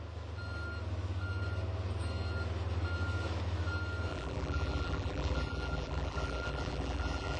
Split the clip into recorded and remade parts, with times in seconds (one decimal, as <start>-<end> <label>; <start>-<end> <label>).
0.0-4.1 recorded; 4.1-7.4 remade